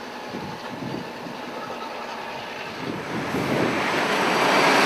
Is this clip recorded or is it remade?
recorded